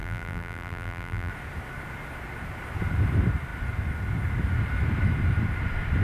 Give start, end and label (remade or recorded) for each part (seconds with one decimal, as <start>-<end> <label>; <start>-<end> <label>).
0.0-1.3 remade; 1.3-6.0 recorded

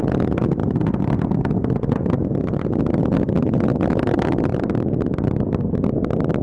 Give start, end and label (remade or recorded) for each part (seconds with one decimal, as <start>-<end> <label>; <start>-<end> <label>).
0.0-0.6 recorded; 0.6-2.8 remade; 2.8-4.5 recorded; 4.5-5.6 remade; 5.6-6.4 recorded